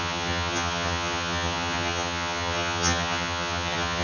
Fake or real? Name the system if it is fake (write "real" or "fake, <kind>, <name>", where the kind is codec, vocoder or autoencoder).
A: fake, vocoder, HiFi-GAN